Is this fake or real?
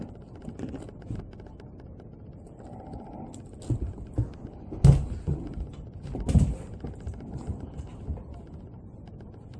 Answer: real